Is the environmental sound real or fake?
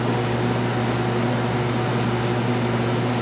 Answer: real